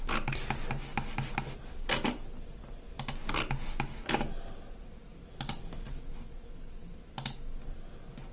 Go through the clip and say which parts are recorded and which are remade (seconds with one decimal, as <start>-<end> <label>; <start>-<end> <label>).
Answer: 0.0-8.3 recorded